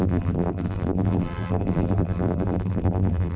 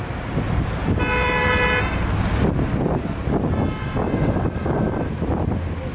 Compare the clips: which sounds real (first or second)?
second